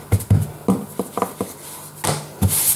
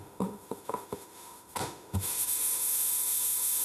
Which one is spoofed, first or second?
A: second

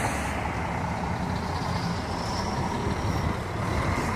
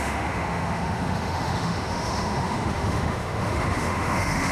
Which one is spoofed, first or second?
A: second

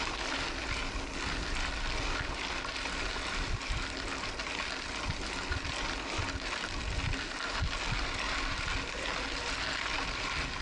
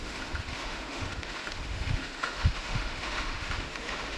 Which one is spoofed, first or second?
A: second